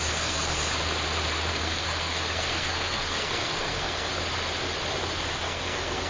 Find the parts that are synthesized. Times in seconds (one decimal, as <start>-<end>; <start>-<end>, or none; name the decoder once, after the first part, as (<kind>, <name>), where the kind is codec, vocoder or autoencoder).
0.0-0.6 (codec, SNAC); 1.5-4.1; 5.3-6.1